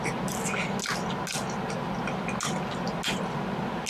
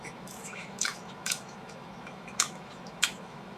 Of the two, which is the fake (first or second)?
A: second